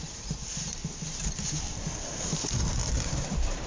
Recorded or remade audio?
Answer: remade